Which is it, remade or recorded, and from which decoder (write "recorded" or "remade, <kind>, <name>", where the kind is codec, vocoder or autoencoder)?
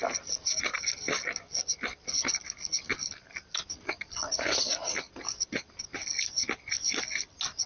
recorded